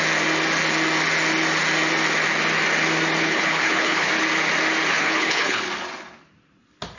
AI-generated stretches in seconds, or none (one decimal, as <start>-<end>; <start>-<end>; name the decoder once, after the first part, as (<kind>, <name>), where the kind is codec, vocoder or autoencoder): 3.2-4.1 (codec, HILCodec); 4.9-5.6